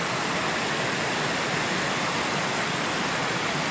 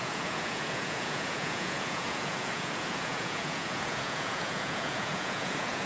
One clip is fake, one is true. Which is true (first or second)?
first